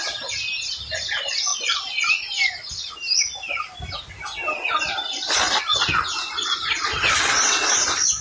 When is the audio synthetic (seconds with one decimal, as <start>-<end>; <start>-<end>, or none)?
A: none